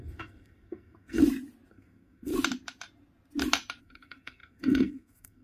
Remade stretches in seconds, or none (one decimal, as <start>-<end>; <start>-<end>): 0.0-1.2; 1.7-2.3; 3.8-5.4